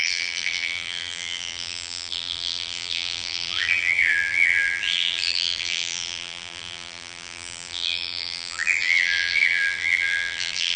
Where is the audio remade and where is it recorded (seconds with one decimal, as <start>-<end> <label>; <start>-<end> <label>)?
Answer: 0.0-10.8 remade